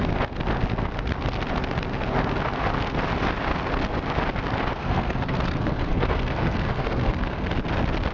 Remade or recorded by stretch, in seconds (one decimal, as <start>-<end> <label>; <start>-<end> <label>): 0.0-4.7 recorded; 4.7-7.5 remade; 7.5-8.1 recorded